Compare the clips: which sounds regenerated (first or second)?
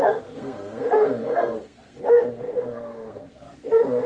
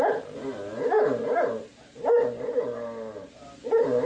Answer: first